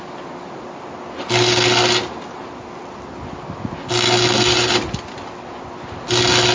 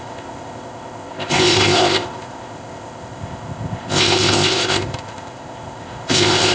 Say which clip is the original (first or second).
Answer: first